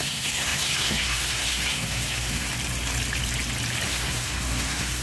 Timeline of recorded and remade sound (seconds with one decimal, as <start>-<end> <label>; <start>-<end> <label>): 0.0-2.5 remade; 2.5-3.9 recorded; 3.9-5.0 remade